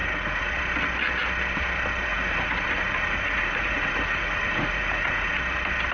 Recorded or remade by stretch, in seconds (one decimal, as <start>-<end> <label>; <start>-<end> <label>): 0.0-0.5 remade; 0.5-2.1 recorded; 2.1-5.3 remade; 5.3-5.9 recorded